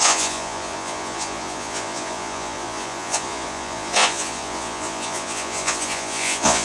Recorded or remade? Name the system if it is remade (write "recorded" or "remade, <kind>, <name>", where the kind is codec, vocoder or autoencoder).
remade, vocoder, Vocos